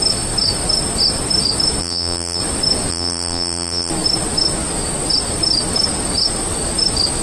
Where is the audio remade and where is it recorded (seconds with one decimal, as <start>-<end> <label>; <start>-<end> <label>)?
0.0-1.8 recorded; 1.8-2.4 remade; 2.4-2.9 recorded; 2.9-3.9 remade; 3.9-7.2 recorded